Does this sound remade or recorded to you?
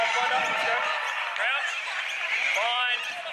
recorded